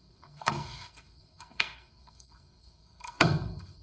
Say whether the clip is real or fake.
fake